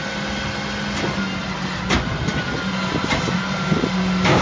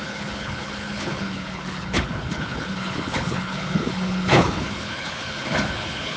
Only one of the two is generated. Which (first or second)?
second